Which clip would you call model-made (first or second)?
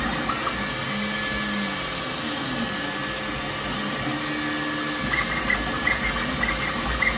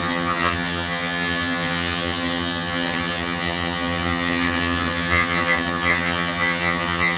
second